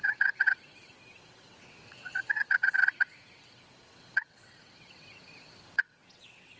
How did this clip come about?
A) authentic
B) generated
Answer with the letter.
B